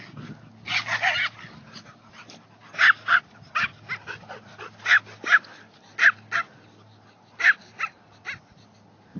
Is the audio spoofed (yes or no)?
no